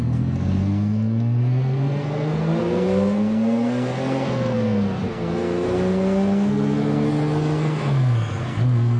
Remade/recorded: remade